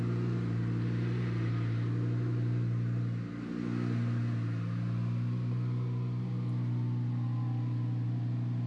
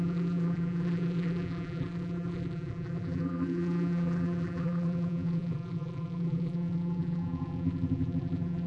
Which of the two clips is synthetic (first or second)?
second